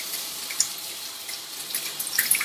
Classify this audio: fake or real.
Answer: fake